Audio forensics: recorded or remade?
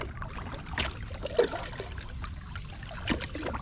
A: recorded